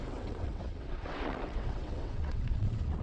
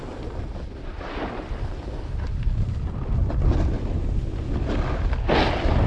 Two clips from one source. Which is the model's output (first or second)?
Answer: first